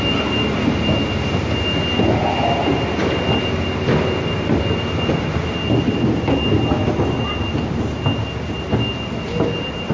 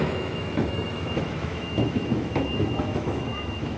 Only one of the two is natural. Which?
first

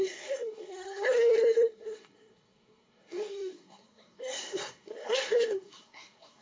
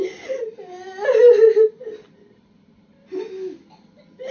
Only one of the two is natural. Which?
second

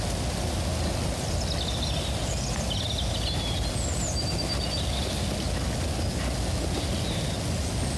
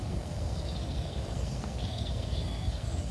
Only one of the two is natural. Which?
first